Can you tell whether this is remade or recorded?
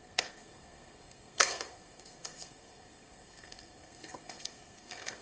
remade